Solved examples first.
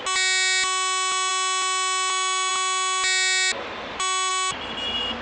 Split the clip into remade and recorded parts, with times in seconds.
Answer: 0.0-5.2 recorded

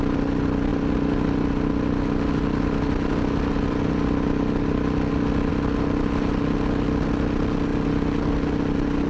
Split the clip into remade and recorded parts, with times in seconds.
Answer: 0.0-9.1 recorded

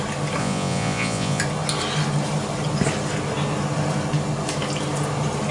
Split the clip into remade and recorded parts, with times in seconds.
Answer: 0.0-0.4 recorded; 0.4-1.4 remade; 1.4-5.5 recorded

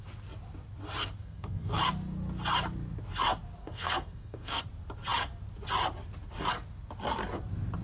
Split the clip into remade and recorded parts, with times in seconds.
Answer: 0.0-1.2 recorded; 1.2-1.8 remade; 1.8-3.6 recorded; 3.6-4.6 remade; 4.6-7.8 recorded

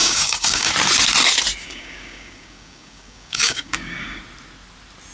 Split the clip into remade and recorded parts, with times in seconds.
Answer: 0.0-0.7 remade; 0.7-1.6 recorded; 1.6-4.2 remade; 4.2-5.1 recorded

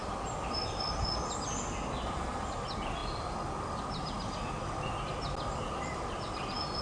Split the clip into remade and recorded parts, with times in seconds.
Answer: 0.0-6.8 recorded